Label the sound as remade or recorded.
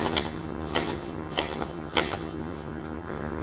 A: remade